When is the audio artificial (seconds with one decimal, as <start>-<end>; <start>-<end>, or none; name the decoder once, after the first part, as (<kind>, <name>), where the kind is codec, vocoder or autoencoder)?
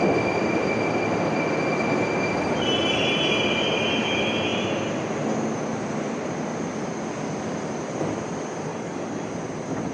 8.7-9.3 (codec, DAC)